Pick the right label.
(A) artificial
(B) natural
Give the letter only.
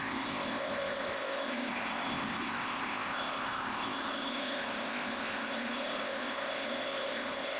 A